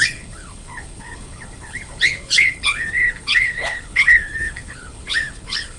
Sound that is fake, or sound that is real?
fake